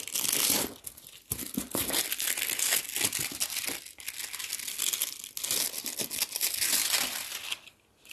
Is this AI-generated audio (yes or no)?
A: no